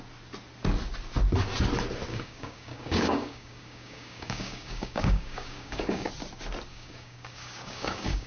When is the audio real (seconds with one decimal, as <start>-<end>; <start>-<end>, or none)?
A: 0.0-2.1; 6.1-6.7